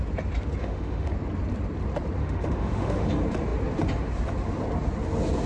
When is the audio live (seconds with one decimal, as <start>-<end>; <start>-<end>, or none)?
0.0-0.6; 1.1-2.2; 3.1-5.5